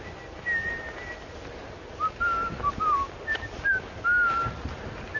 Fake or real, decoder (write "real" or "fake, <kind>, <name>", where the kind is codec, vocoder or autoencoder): real